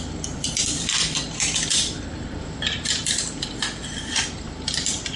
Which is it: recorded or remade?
remade